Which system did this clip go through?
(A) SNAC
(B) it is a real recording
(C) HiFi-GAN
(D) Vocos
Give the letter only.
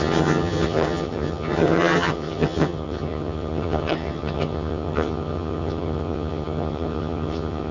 C